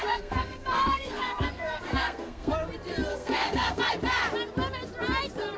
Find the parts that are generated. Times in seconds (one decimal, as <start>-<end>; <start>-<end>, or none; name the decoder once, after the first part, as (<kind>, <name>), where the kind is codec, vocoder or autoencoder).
0.0-2.5 (codec, SNAC); 3.1-3.8